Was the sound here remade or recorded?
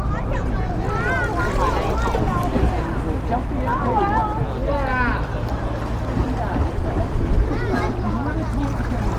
recorded